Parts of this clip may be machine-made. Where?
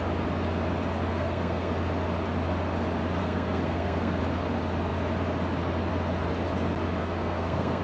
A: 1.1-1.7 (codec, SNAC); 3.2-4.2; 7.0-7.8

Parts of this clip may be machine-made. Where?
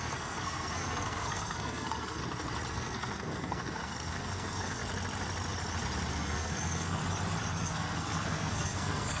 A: 0.0-2.2 (codec, SNAC); 2.7-4.8; 6.1-7.0; 7.6-9.2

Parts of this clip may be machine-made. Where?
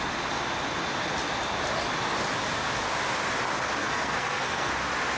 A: 3.8-4.7 (codec, SNAC)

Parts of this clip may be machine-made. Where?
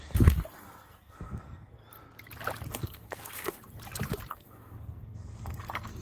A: 0.0-1.8 (codec, SNAC); 2.7-3.6; 4.3-6.0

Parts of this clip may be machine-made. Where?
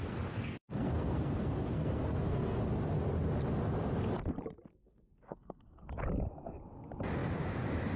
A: 0.0-2.6 (codec, SNAC); 4.7-5.8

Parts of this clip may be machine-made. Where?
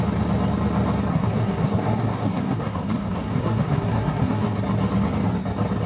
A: 1.1-4.6 (codec, SNAC)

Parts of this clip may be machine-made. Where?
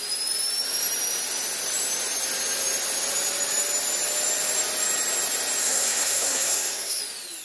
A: 5.6-7.0 (codec, SNAC)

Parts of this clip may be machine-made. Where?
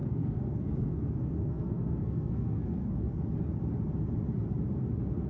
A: 0.0-3.2 (codec, SNAC)